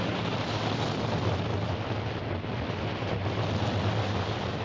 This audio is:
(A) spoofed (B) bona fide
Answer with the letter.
B